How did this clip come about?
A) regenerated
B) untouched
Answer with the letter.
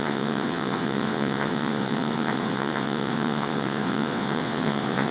A